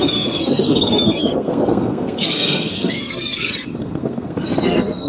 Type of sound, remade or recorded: remade